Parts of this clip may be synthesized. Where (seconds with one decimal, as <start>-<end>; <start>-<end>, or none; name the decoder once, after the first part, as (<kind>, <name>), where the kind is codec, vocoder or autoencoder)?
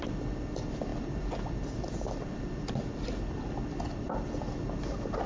none